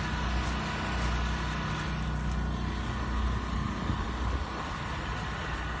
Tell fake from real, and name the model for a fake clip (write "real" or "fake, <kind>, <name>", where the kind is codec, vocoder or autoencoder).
real